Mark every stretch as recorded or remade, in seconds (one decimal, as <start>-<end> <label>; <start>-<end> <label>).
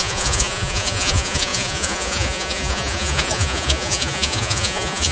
0.0-5.1 remade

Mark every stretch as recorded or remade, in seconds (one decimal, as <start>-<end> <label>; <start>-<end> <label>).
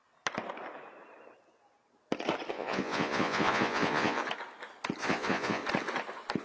0.0-2.5 recorded; 2.5-4.2 remade; 4.2-5.0 recorded; 5.0-5.6 remade; 5.6-6.4 recorded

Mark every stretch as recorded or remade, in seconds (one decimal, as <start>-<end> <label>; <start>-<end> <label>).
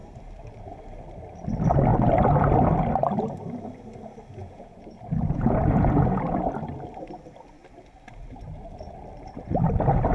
0.0-4.4 recorded; 4.4-6.5 remade; 6.5-10.1 recorded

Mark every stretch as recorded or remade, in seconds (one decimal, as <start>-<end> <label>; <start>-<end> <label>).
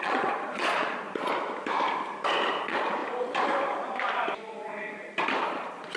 0.0-1.3 remade; 1.3-2.6 recorded; 2.6-3.0 remade; 3.0-5.4 recorded; 5.4-6.0 remade